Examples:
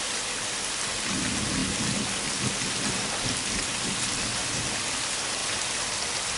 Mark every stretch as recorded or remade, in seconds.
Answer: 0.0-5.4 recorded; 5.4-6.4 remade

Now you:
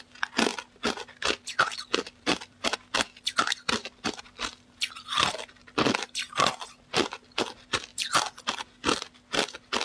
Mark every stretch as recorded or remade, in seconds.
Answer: 0.0-0.5 remade; 0.5-2.0 recorded; 2.0-7.9 remade; 7.9-8.5 recorded; 8.5-9.8 remade

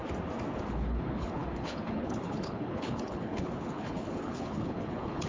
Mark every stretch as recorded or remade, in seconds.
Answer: 0.0-0.7 recorded; 0.7-5.3 remade

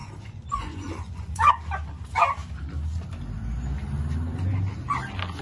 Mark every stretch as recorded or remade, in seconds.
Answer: 0.0-1.5 remade; 1.5-5.4 recorded

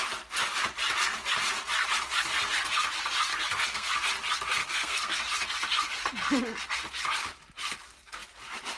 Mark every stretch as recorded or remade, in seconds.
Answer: 0.0-3.3 recorded; 3.3-3.9 remade; 3.9-4.6 recorded; 4.6-5.2 remade; 5.2-8.8 recorded